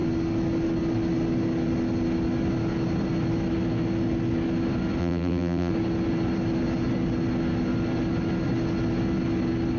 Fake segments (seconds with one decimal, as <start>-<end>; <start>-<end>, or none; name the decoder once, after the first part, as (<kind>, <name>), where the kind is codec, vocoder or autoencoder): 5.0-5.7 (vocoder, BigVGAN v2)

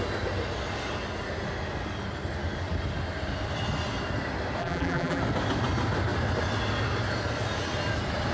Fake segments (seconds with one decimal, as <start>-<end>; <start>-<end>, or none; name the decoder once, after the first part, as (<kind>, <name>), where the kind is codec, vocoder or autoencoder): 4.6-5.2 (vocoder, BigVGAN v2)

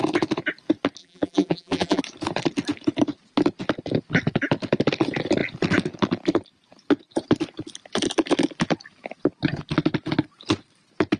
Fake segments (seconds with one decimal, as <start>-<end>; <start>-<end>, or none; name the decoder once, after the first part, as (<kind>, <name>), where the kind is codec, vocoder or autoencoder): 1.0-2.0 (vocoder, BigVGAN v2)

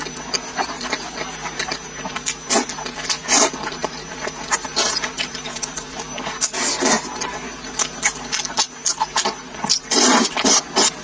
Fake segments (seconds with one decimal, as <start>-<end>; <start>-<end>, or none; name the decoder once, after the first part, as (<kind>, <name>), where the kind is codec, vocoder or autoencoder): 3.8-6.2 (vocoder, BigVGAN v2); 8.8-10.3

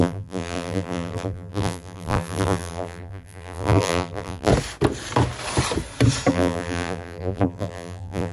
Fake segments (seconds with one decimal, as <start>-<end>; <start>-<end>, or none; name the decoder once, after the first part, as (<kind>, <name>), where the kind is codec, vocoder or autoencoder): 0.0-4.5 (vocoder, BigVGAN v2); 6.3-8.3

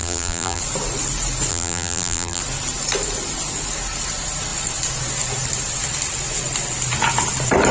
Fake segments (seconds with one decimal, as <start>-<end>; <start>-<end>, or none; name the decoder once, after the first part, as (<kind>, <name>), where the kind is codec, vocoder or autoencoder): 0.0-0.6 (vocoder, BigVGAN v2); 1.5-2.4

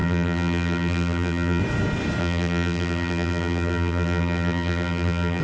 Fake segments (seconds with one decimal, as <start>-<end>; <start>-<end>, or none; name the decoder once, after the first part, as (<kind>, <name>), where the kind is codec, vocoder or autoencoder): 0.0-1.6 (vocoder, BigVGAN v2); 2.2-5.4

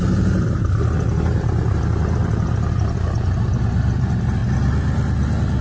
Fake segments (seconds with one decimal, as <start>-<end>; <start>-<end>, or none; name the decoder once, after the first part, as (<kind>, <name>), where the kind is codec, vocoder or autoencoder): 0.0-4.4 (vocoder, BigVGAN v2)